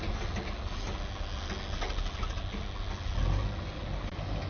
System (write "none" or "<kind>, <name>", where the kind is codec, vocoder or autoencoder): none